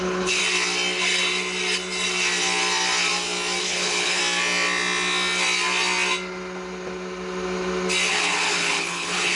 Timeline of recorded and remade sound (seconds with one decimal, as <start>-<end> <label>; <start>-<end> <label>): 0.0-0.4 remade; 0.4-3.6 recorded; 3.6-4.2 remade; 4.2-8.1 recorded; 8.1-9.4 remade